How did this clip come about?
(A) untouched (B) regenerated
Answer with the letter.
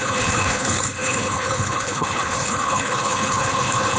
B